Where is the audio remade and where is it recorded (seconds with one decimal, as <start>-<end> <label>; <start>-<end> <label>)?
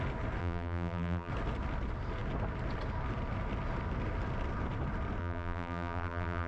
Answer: 0.0-0.4 recorded; 0.4-1.3 remade; 1.3-5.2 recorded; 5.2-6.5 remade